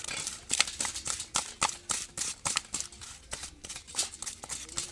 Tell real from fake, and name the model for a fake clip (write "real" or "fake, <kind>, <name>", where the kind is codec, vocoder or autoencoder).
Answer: real